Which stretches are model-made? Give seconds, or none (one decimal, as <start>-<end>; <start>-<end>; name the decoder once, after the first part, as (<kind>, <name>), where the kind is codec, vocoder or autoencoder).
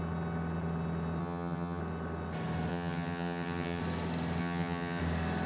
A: 1.2-1.8 (vocoder, HiFi-GAN); 2.7-3.8; 4.4-5.0